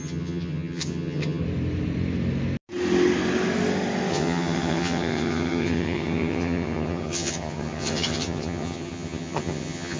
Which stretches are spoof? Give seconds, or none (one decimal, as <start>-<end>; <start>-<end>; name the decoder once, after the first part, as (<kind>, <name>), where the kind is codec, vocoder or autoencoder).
0.0-1.4 (vocoder, HiFi-GAN); 4.1-10.0